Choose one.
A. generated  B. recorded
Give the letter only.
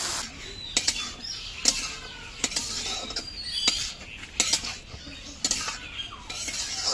B